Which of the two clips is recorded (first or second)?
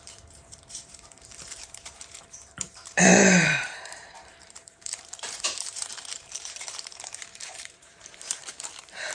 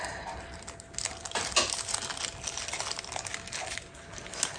second